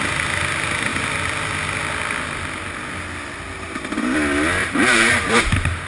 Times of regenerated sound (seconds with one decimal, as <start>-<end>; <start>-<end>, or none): 4.6-5.3